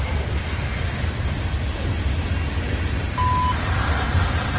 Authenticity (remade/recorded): recorded